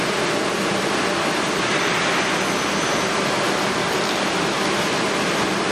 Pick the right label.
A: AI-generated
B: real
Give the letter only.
B